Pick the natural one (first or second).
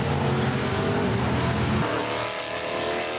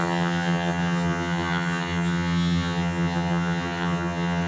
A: first